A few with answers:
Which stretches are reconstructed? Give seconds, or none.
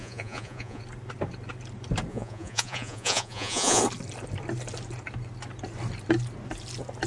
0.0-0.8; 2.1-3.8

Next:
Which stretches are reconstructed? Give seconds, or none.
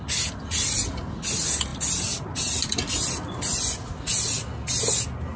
none